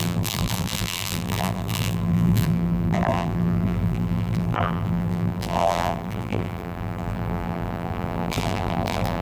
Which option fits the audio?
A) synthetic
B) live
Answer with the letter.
A